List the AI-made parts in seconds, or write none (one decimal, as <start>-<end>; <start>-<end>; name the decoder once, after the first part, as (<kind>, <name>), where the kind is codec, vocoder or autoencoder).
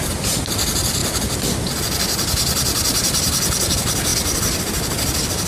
1.0-1.8 (vocoder, BigVGAN v2)